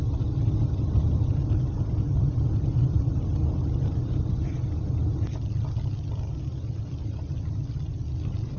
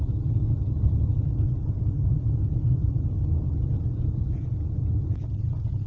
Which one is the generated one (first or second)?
second